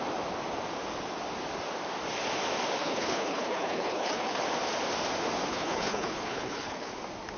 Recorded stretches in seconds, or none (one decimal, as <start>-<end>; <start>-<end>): 0.0-2.8; 4.4-5.5; 6.9-7.4